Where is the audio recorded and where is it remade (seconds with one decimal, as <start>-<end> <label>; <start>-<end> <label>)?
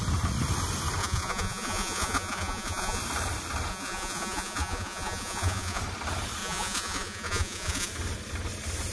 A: 0.0-1.0 recorded; 1.0-3.0 remade; 3.0-3.7 recorded; 3.7-5.8 remade; 5.8-6.4 recorded; 6.4-7.9 remade; 7.9-8.9 recorded